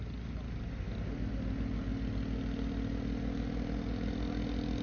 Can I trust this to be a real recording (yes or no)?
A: yes